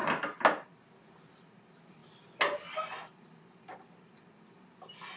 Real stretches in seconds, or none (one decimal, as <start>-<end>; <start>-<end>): 0.0-5.2